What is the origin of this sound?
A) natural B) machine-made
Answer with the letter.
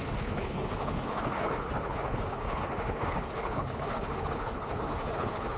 B